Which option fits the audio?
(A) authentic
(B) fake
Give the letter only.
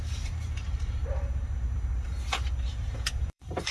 B